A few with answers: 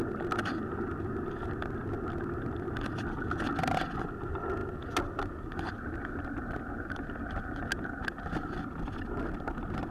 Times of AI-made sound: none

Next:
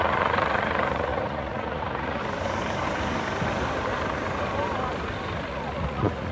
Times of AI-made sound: 0.0-2.2 (vocoder, Vocos); 5.4-6.3

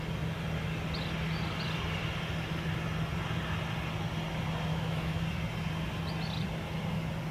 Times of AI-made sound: 4.7-5.2 (autoencoder, DAC-VAE)

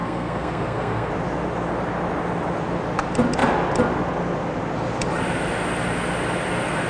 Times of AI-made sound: 0.0-1.1 (codec, SNAC)

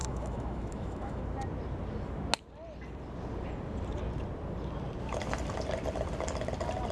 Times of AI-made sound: 0.0-1.2 (autoencoder, DAC-VAE)

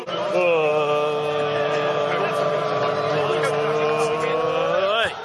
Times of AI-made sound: none

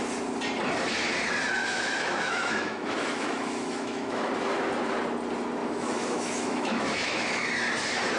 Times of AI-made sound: 1.6-4.3 (autoencoder, DAC-VAE); 5.6-7.5

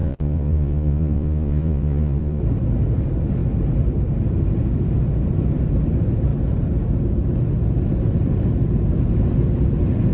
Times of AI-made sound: 0.0-2.4 (vocoder, Vocos)